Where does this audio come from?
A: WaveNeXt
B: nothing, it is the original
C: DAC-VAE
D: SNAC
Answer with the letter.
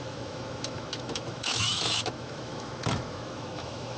C